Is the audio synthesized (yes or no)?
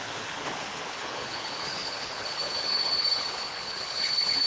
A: yes